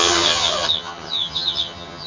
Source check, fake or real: fake